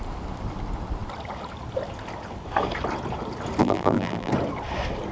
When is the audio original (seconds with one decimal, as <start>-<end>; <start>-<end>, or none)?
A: 0.0-3.6; 4.3-5.1